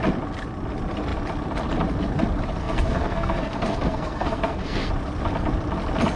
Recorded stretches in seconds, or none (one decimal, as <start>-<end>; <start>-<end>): 0.0-2.6; 4.9-6.2